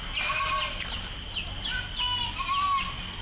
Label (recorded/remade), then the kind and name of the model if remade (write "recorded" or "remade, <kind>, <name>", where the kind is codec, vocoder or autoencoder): recorded